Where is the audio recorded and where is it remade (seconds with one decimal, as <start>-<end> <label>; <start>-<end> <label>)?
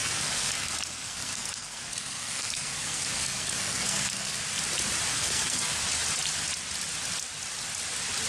0.0-4.4 remade; 4.4-5.1 recorded; 5.1-5.8 remade; 5.8-8.3 recorded